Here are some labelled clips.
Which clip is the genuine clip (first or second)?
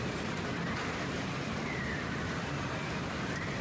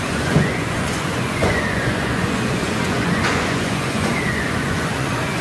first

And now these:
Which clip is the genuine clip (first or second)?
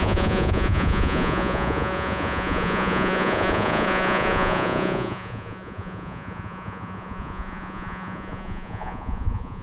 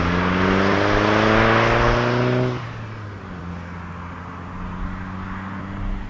second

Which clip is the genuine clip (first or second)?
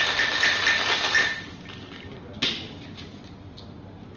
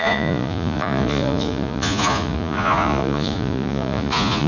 first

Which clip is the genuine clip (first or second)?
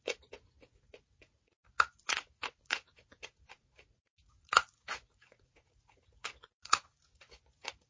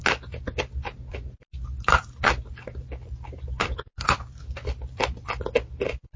second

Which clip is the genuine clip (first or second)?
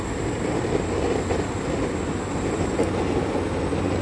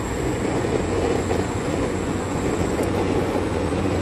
first